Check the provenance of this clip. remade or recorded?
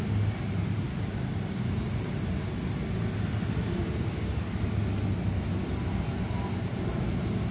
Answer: recorded